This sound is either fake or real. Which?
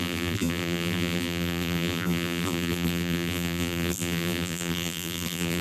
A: fake